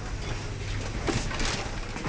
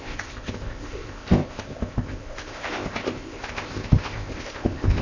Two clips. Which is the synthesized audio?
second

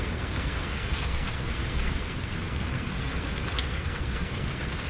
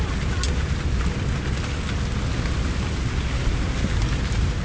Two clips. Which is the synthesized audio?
first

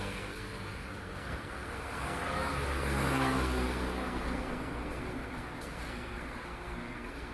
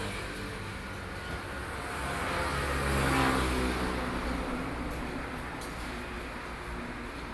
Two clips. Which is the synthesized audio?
first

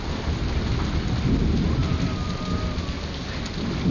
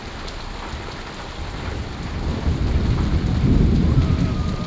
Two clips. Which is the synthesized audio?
second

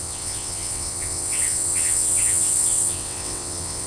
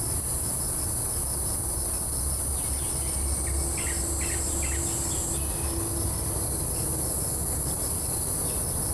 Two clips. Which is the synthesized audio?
first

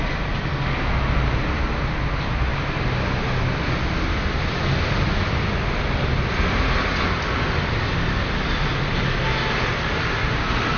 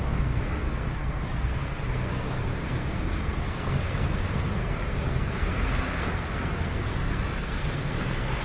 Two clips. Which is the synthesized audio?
second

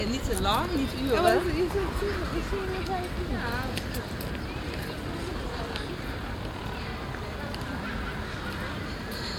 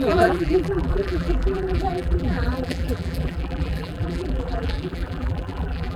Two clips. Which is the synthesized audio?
second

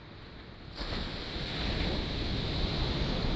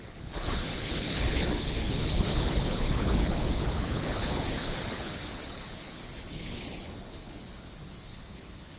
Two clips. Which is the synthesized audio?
second